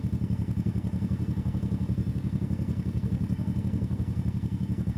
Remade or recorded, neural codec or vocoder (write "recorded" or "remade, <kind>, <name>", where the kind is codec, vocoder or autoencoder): remade, codec, SNAC